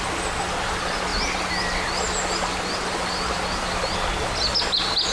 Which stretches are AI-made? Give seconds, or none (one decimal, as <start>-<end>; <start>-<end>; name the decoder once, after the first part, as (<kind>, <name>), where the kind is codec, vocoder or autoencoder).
none